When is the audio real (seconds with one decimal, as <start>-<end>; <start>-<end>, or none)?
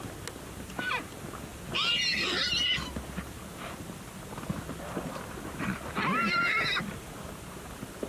0.0-8.1